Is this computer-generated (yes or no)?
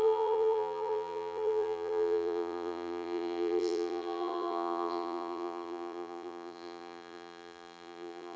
yes